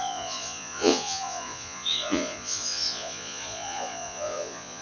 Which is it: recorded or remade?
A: remade